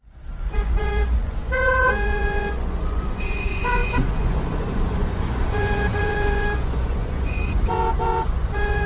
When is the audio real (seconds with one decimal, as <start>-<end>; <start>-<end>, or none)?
none